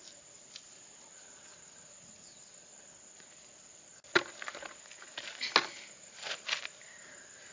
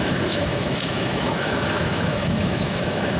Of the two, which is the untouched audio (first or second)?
first